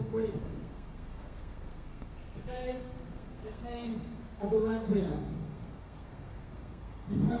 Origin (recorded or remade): remade